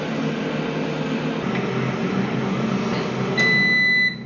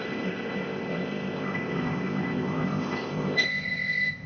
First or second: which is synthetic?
second